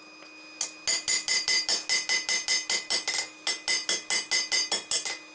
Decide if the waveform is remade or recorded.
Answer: recorded